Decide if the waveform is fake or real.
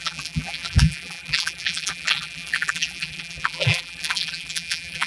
fake